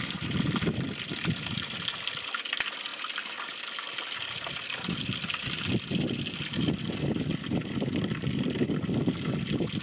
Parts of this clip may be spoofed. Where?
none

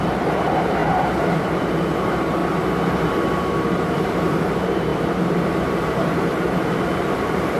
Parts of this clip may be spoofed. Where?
0.0-2.4 (vocoder, BigVGAN v2); 3.0-7.6

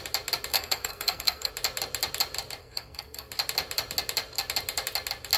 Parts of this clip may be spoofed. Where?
0.5-1.5 (codec, SNAC); 2.6-3.3

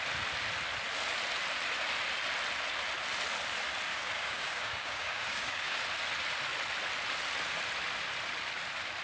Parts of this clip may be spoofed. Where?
3.9-5.8 (codec, DAC)

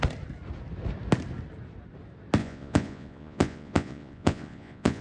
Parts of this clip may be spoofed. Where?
2.4-5.0 (vocoder, Vocos)